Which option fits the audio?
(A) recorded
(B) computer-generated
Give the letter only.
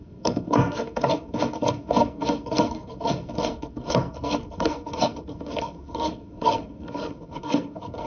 B